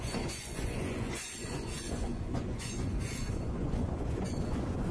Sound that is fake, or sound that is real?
fake